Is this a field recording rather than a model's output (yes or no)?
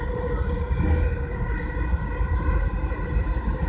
yes